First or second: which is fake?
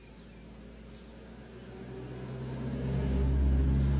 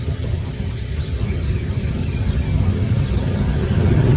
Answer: second